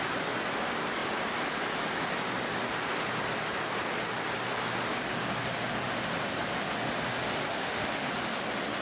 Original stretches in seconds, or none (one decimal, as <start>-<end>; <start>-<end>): 0.0-7.5; 8.1-8.8